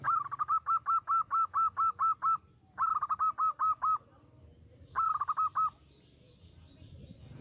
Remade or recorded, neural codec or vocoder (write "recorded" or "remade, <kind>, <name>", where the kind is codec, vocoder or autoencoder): recorded